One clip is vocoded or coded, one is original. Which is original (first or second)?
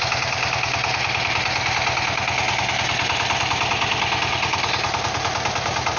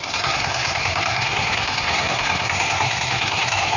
first